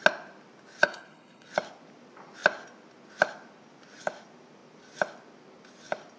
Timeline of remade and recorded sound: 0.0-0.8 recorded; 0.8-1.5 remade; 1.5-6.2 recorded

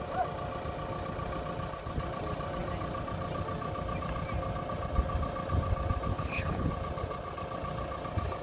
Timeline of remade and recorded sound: 0.0-6.1 recorded; 6.1-6.7 remade; 6.7-8.4 recorded

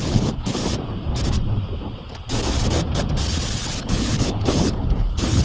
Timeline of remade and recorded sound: 0.0-0.6 remade; 0.6-3.8 recorded; 3.8-5.4 remade

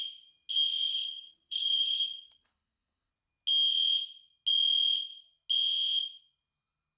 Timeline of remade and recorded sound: 0.0-0.9 recorded; 0.9-3.1 remade; 3.1-7.0 recorded

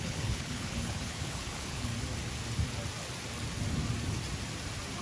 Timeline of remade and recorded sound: 0.0-1.9 remade; 1.9-5.0 recorded

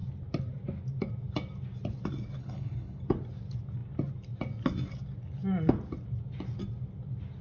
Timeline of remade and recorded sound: 0.0-2.4 recorded; 2.4-3.0 remade; 3.0-7.4 recorded

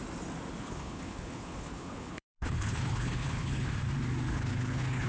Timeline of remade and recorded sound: 0.0-0.6 recorded; 0.6-3.7 remade; 3.7-4.3 recorded; 4.3-5.1 remade